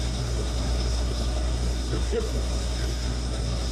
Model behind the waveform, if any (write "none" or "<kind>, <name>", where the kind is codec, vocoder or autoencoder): codec, SNAC